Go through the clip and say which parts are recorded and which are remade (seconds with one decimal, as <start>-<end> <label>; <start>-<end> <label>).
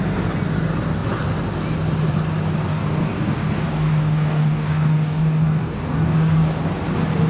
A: 0.0-2.7 recorded; 2.7-6.6 remade; 6.6-7.3 recorded